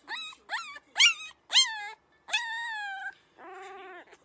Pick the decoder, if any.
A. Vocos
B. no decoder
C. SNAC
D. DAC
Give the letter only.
B